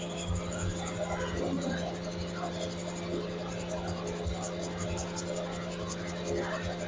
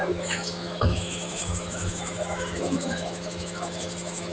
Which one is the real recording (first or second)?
first